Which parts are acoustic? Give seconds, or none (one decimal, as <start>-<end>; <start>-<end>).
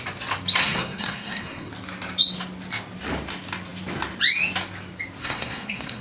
0.0-0.6; 1.7-5.2